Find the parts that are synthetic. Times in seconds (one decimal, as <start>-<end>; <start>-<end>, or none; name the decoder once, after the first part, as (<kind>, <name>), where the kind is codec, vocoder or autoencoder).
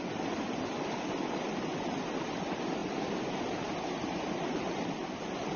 none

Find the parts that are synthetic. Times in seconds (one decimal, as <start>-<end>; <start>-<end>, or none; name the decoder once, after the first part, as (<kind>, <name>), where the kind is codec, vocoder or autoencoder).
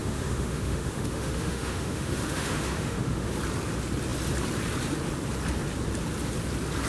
0.0-3.3 (autoencoder, DAC-VAE)